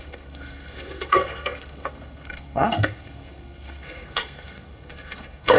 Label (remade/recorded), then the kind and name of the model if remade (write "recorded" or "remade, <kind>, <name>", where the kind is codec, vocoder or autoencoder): remade, codec, SNAC